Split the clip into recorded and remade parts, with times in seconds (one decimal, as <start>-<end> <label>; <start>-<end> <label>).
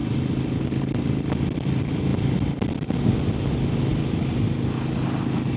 0.0-5.6 recorded